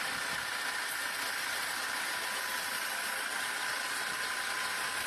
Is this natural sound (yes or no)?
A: yes